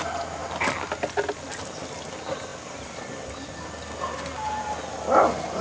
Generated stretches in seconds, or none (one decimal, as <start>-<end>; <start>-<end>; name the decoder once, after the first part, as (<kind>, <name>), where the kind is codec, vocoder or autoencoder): none